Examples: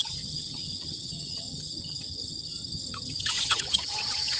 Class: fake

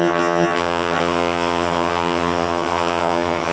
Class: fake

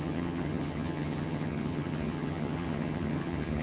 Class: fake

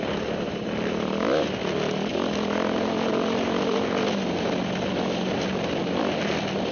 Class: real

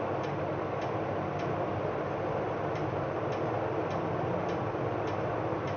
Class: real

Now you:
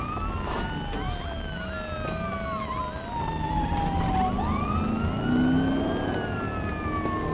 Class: real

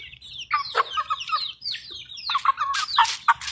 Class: real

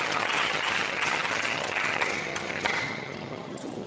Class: fake